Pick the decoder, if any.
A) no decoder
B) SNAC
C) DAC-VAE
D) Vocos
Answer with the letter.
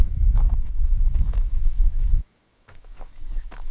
C